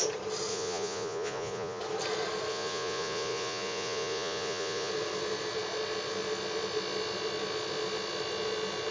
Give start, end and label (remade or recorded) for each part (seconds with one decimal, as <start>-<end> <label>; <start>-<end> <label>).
0.0-0.5 recorded; 0.5-1.8 remade; 1.8-2.5 recorded; 2.5-4.9 remade; 4.9-8.9 recorded